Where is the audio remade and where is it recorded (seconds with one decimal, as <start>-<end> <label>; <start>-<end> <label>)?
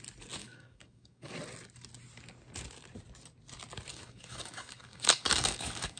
0.0-0.4 recorded; 0.4-1.3 remade; 1.3-3.9 recorded; 3.9-6.0 remade